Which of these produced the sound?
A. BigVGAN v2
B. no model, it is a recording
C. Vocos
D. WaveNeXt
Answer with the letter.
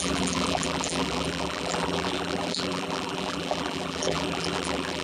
A